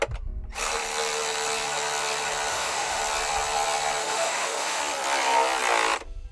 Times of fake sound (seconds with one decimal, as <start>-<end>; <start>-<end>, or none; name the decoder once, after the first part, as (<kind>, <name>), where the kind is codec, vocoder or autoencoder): 2.5-3.0 (autoencoder, DAC-VAE); 4.0-4.8